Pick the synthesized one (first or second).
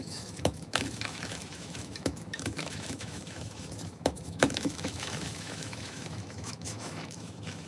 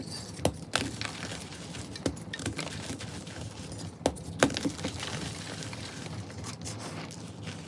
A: first